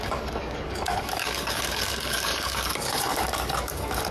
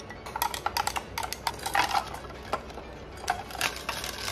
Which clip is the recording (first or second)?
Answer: second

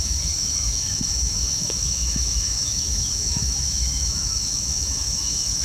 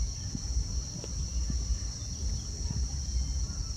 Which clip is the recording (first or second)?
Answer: second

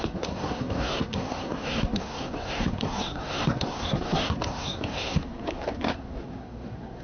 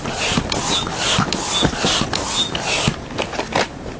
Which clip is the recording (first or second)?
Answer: second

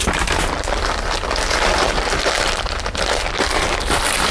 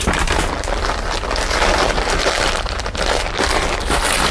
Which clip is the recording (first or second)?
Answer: second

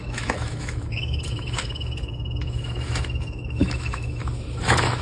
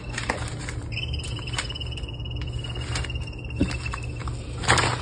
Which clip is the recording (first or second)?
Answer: second